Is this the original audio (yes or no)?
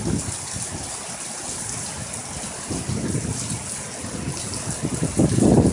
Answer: no